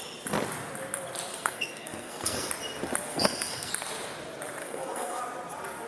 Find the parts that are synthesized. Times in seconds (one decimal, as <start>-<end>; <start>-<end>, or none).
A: 1.3-2.5; 3.1-3.7; 4.6-5.2